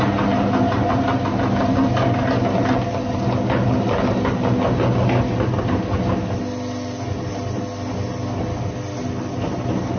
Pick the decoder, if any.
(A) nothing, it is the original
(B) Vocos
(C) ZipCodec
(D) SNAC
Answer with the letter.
A